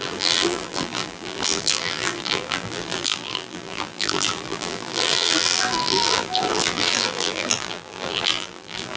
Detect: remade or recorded remade